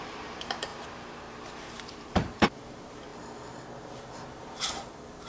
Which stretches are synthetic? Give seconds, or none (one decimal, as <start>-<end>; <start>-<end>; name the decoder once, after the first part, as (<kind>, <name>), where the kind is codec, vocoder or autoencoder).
0.0-0.7 (vocoder, BigVGAN v2); 1.3-3.1; 3.8-5.3